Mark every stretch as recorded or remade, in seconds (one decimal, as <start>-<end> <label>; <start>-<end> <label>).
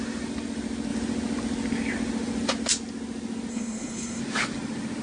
0.0-3.5 recorded; 3.5-4.2 remade; 4.2-5.0 recorded